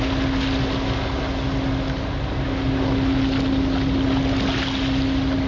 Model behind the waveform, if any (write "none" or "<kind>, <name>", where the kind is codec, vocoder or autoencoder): none